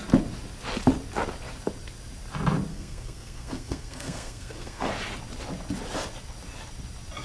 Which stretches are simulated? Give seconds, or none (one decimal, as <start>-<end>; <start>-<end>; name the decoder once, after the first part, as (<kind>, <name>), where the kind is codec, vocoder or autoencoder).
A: 2.7-4.9 (codec, SNAC)